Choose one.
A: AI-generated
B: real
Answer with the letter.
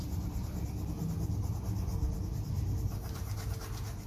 B